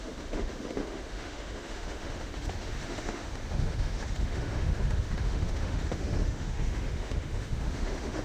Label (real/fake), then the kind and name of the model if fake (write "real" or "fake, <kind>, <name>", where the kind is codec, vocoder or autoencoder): fake, autoencoder, DAC-VAE